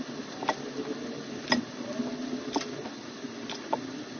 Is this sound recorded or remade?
recorded